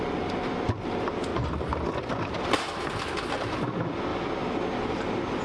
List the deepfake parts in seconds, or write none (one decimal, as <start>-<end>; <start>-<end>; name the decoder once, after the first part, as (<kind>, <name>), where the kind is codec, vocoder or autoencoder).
none